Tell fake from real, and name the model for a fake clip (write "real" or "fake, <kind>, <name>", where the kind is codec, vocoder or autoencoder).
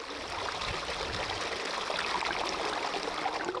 real